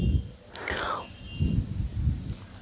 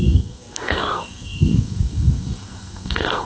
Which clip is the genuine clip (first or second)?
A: first